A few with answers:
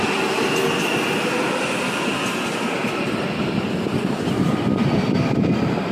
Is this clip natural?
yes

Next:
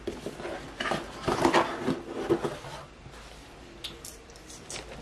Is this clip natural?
yes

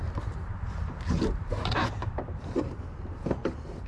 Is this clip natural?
no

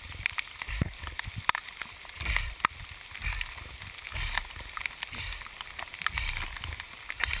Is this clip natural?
yes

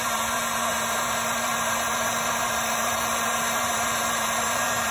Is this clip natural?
no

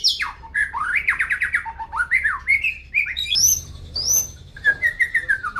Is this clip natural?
no